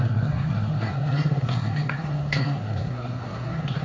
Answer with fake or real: fake